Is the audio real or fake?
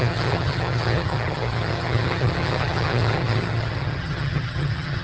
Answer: fake